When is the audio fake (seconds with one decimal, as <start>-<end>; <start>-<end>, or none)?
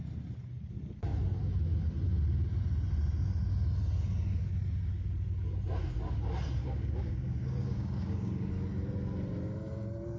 6.6-8.5